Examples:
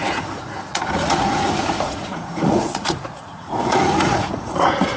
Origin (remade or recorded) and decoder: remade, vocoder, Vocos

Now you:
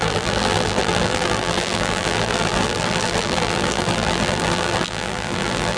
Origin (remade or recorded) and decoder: remade, vocoder, BigVGAN v2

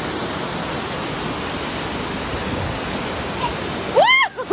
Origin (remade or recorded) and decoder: recorded